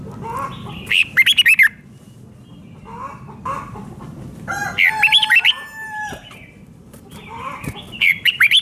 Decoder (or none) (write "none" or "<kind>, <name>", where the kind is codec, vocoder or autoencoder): none